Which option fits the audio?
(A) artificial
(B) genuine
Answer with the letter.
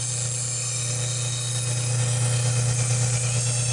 B